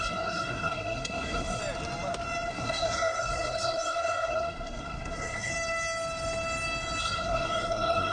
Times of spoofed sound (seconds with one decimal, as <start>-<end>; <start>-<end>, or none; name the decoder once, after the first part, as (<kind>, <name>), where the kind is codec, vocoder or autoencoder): 0.0-1.6 (codec, SNAC); 2.5-5.5; 7.0-8.1